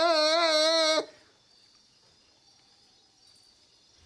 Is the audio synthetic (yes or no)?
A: no